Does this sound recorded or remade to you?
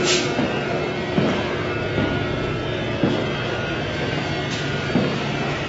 recorded